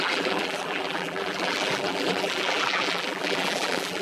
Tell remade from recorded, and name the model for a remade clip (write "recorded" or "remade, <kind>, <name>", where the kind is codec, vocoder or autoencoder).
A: remade, vocoder, BigVGAN v2